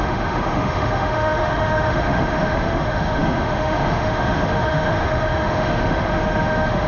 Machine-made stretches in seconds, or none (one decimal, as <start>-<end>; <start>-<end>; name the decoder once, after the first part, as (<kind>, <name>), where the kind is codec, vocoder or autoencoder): 0.0-6.9 (autoencoder, DAC-VAE)